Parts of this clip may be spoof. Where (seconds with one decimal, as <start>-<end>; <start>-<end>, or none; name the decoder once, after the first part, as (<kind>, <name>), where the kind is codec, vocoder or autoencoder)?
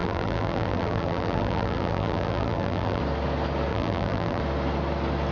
0.0-3.0 (vocoder, BigVGAN v2); 3.7-4.4